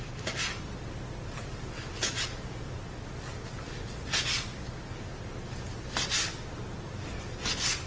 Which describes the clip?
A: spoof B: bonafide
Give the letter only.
B